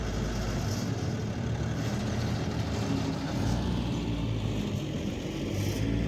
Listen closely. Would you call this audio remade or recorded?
recorded